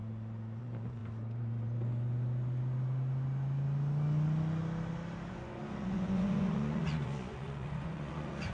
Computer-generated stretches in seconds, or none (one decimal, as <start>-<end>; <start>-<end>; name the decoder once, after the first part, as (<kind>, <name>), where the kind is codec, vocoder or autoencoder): 0.6-1.0 (vocoder, Vocos); 5.3-8.5